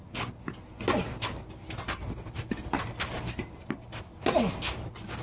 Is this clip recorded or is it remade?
recorded